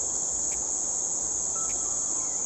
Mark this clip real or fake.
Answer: real